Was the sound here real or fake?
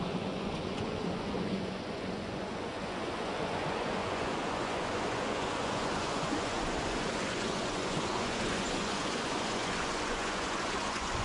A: fake